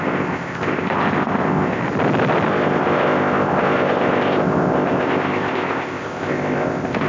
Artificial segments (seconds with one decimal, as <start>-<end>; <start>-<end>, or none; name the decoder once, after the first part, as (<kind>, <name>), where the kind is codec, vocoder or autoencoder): 0.0-1.8 (codec, ZipCodec); 2.5-7.1